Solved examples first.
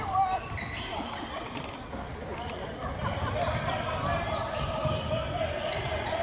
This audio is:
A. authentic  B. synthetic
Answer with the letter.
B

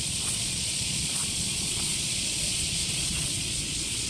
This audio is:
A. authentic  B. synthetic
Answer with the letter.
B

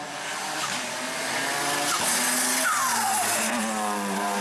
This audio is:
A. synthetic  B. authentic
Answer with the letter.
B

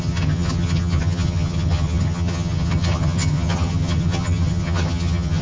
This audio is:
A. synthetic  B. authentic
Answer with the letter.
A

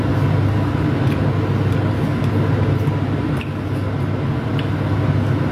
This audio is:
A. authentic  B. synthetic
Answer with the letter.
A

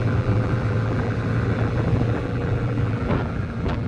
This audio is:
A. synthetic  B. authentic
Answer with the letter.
A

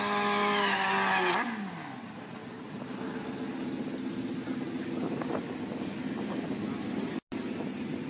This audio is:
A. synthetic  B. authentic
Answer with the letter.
B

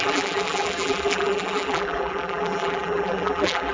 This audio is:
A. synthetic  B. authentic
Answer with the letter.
A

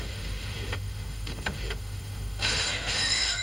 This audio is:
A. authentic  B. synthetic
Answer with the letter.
B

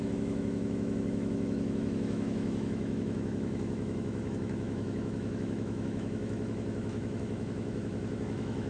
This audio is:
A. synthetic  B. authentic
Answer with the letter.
A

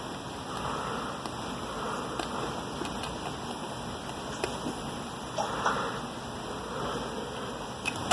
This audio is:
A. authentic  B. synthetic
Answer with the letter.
A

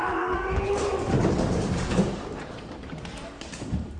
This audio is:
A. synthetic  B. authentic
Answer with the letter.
A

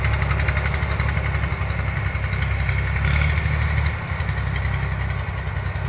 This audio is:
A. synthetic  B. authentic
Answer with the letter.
B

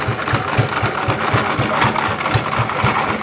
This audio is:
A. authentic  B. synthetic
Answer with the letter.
A